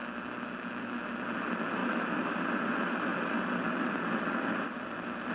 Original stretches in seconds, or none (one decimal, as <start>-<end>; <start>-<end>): 0.0-1.8